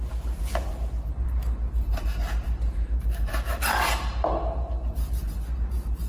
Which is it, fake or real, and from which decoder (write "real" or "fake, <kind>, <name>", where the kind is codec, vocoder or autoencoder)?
fake, vocoder, BigVGAN v2